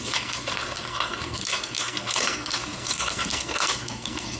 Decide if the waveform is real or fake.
fake